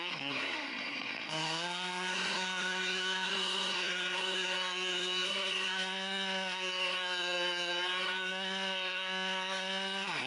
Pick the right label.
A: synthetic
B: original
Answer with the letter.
A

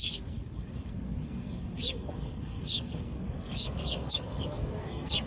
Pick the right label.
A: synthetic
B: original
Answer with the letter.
A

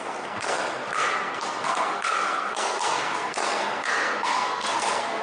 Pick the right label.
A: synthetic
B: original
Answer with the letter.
A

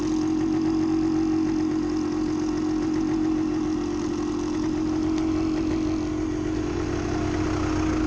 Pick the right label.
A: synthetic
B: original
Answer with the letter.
B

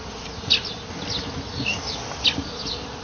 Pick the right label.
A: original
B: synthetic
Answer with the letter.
A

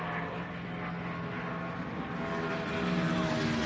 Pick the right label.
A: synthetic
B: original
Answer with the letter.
B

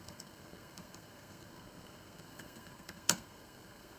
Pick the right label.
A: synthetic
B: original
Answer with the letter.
A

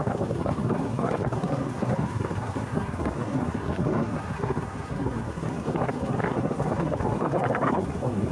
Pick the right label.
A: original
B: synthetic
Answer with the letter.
B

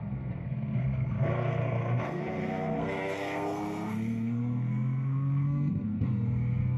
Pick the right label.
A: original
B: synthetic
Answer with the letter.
B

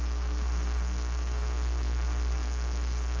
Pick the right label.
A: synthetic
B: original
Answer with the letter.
A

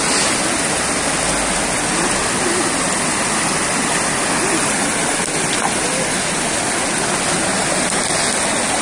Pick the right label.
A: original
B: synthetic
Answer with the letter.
A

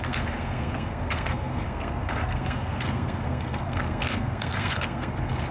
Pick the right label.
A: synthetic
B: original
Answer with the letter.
A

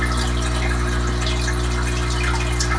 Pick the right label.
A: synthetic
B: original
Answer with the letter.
B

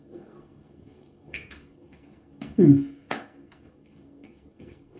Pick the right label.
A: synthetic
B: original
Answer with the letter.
A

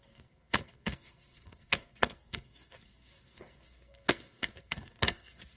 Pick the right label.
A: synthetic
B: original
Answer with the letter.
A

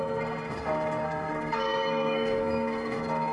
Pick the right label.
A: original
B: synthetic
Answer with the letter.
B